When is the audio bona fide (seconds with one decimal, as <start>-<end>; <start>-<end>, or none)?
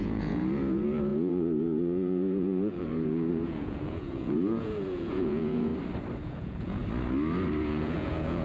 5.7-6.2; 6.8-7.6